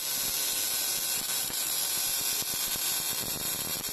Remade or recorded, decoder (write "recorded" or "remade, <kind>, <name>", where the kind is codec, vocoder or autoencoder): recorded